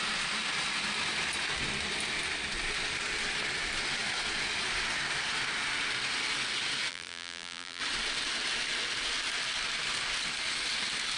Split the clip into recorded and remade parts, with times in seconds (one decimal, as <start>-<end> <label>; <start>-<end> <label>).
0.0-6.9 recorded; 6.9-7.8 remade; 7.8-11.2 recorded